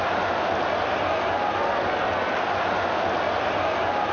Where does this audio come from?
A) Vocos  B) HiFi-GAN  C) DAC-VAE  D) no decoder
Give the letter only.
D